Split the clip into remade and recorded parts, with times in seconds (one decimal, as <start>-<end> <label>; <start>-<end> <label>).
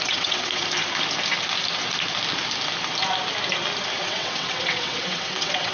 0.0-0.6 remade; 0.6-4.0 recorded; 4.0-5.7 remade